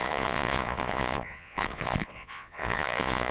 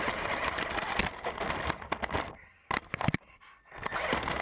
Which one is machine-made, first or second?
first